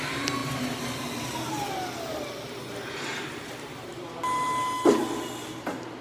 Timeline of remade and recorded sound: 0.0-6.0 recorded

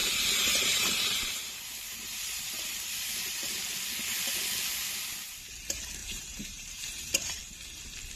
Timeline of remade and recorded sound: 0.0-3.6 remade; 3.6-6.0 recorded; 6.0-7.4 remade; 7.4-8.2 recorded

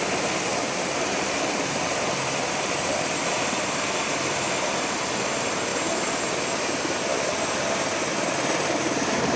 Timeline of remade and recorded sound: 0.0-0.5 recorded; 0.5-5.1 remade; 5.1-9.4 recorded

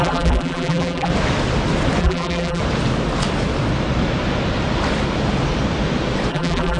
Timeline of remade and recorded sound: 0.0-1.1 remade; 1.1-2.0 recorded; 2.0-2.6 remade; 2.6-6.3 recorded; 6.3-6.8 remade

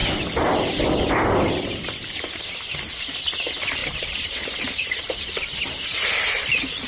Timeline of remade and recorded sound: 0.0-3.8 recorded; 3.8-5.0 remade; 5.0-6.9 recorded

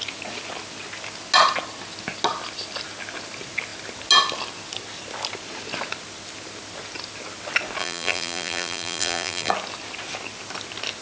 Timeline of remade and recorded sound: 0.0-7.8 recorded; 7.8-9.5 remade; 9.5-11.0 recorded

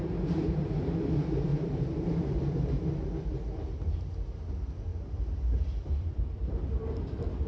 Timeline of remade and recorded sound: 0.0-1.5 recorded; 1.5-2.8 remade; 2.8-4.9 recorded; 4.9-6.7 remade; 6.7-7.5 recorded

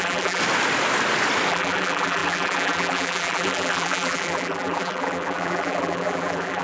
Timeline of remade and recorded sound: 0.0-0.4 remade; 0.4-1.5 recorded; 1.5-6.6 remade